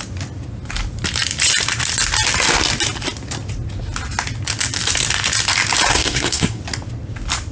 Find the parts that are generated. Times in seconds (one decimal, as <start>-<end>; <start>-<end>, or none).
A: 5.9-6.6